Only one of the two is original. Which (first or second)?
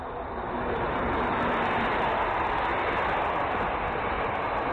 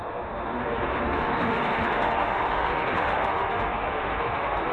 first